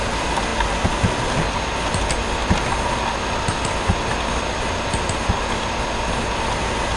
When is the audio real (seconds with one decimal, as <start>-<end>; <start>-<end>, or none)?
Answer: 0.0-7.0